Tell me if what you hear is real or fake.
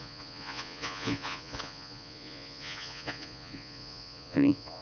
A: fake